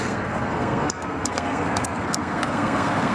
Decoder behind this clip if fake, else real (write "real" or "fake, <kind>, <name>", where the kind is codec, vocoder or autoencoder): fake, codec, SNAC